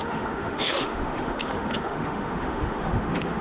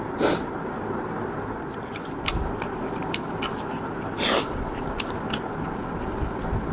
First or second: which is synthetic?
first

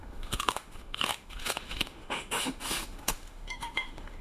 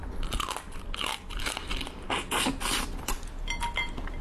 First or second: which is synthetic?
first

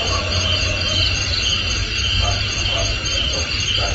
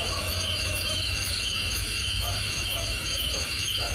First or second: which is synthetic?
second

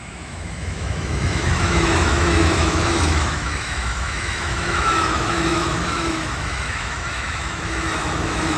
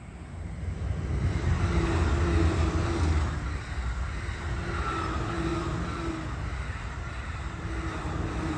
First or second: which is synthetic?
first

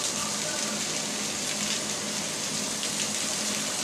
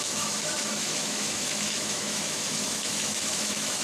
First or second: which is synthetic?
second